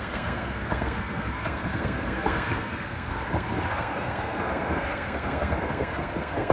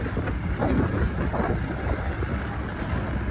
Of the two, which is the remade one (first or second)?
first